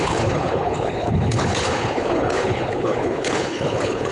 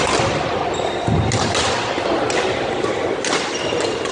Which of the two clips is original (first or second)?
second